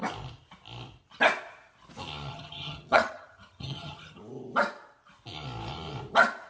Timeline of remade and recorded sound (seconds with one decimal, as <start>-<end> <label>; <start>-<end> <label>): 0.0-2.3 recorded; 2.3-4.2 remade; 4.2-6.5 recorded